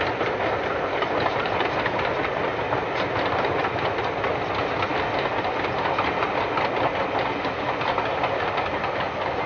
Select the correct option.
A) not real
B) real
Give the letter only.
B